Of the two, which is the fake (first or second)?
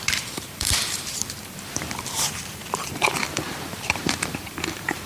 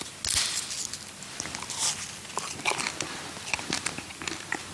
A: first